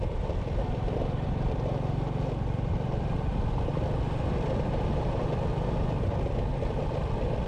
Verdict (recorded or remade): recorded